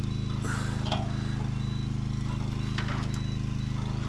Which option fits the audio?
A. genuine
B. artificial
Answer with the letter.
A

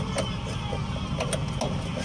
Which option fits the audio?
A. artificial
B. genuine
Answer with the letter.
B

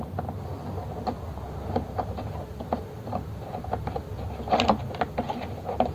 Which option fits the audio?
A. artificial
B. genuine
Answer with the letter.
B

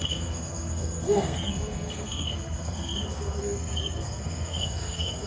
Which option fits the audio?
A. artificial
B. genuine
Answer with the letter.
A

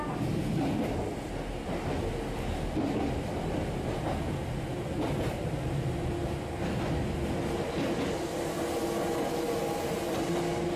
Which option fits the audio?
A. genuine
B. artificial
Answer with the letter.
A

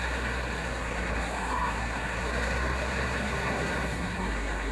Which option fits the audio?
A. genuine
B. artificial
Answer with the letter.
B